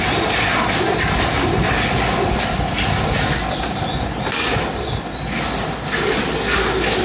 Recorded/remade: recorded